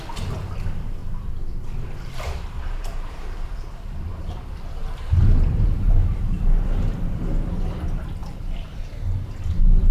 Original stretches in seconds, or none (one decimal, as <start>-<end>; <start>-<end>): 0.0-1.0; 4.3-4.8; 7.2-8.2; 8.8-9.9